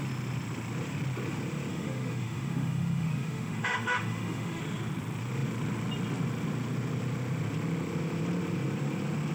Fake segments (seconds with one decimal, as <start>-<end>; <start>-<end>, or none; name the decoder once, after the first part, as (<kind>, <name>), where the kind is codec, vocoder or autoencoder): 1.7-4.6 (autoencoder, DAC-VAE)